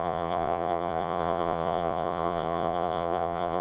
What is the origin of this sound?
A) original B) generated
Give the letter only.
B